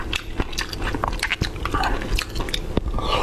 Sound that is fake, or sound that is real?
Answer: real